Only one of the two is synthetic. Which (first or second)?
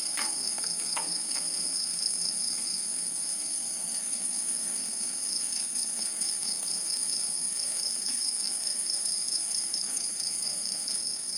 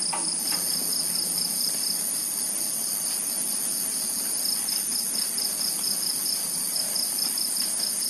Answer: first